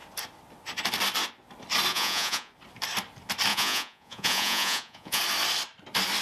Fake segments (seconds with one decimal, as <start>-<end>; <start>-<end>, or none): 1.9-2.5; 3.5-5.2